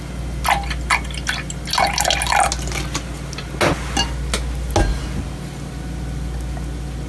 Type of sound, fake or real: real